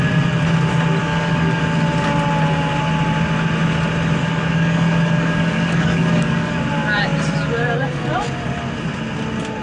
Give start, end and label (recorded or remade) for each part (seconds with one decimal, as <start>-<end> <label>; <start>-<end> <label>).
0.0-1.0 recorded; 1.0-1.6 remade; 1.6-4.2 recorded; 4.2-6.6 remade; 6.6-9.6 recorded